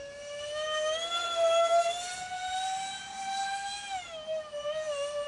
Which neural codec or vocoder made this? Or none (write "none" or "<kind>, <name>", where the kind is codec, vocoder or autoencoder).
none